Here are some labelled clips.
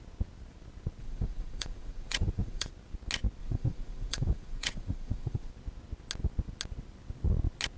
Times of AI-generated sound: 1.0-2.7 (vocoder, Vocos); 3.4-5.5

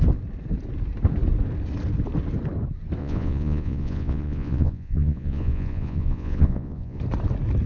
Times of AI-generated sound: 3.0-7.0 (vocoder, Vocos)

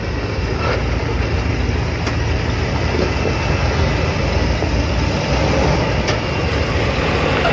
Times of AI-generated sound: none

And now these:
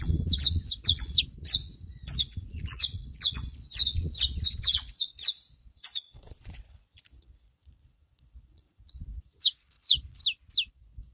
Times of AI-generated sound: 0.0-10.2 (vocoder, Vocos); 10.7-11.1

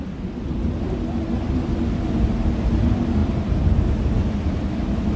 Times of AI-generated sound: none

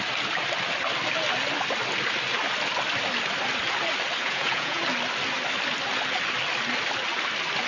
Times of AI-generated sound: 4.2-4.8 (vocoder, Vocos)

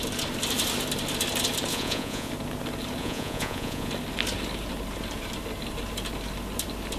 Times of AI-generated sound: 1.7-2.3 (vocoder, Vocos); 3.0-3.9

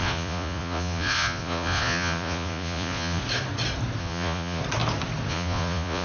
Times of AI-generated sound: 0.0-3.2 (vocoder, Vocos); 4.0-4.6; 5.3-6.0